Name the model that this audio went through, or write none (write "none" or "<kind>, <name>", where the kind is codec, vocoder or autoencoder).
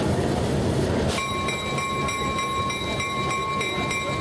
vocoder, BigVGAN v2